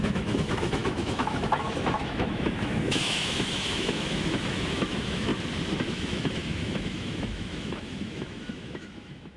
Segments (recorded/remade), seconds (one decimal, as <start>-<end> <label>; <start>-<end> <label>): 0.0-5.3 remade; 5.3-5.9 recorded; 5.9-9.4 remade